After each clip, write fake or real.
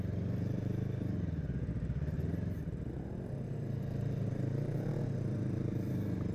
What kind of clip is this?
real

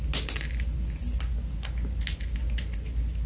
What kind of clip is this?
real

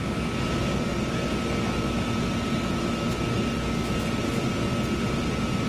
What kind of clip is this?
real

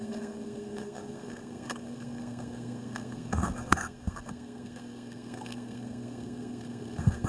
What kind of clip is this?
fake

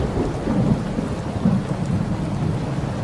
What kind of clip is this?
real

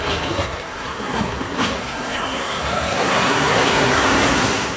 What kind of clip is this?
fake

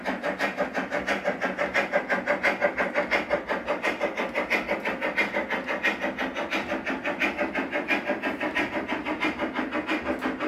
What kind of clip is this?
real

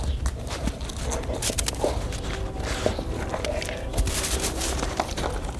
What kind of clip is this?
real